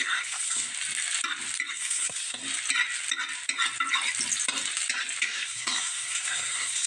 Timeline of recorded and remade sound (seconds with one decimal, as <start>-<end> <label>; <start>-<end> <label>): 0.0-0.7 remade; 0.7-1.7 recorded; 1.7-2.4 remade; 2.4-5.2 recorded; 5.2-6.9 remade